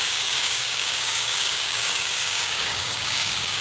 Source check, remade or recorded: remade